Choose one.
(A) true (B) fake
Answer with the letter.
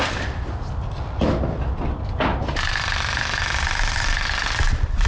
A